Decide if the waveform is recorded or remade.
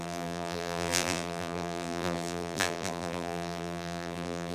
remade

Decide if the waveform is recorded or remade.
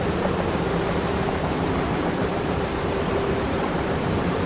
remade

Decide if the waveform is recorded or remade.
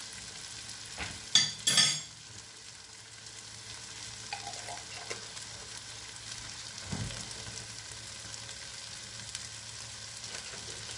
recorded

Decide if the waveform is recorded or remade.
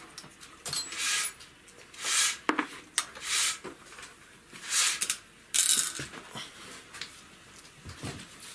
recorded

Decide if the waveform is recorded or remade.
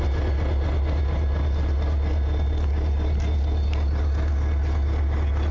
recorded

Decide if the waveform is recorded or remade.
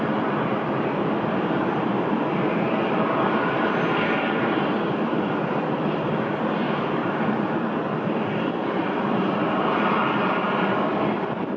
remade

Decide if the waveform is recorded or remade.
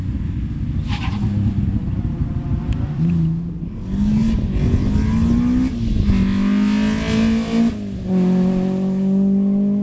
recorded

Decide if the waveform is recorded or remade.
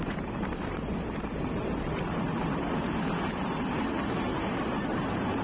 remade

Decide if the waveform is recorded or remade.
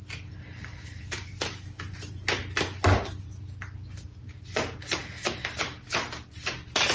recorded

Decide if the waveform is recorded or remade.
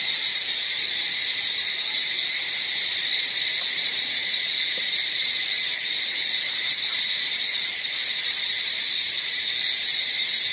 remade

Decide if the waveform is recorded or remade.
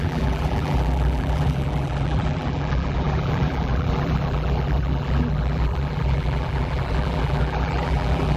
remade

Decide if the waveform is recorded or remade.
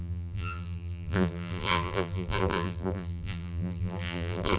remade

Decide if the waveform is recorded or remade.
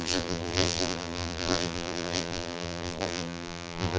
remade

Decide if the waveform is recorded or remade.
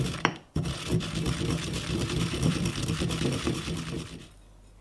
remade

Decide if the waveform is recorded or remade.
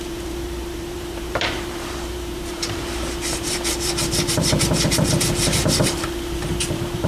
remade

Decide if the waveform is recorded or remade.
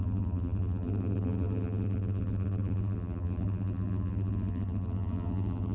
remade